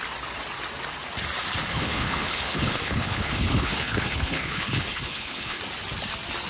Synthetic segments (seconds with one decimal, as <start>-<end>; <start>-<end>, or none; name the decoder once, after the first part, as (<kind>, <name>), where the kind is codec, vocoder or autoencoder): 1.7-5.6 (codec, HILCodec)